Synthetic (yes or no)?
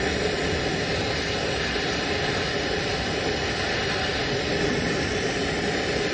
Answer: no